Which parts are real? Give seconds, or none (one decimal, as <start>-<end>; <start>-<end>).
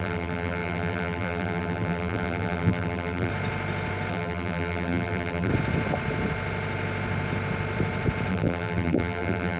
3.3-4.1; 5.5-8.3